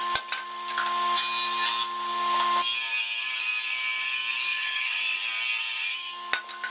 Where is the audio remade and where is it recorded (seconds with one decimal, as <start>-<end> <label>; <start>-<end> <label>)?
0.0-4.4 recorded; 4.4-5.0 remade; 5.0-6.7 recorded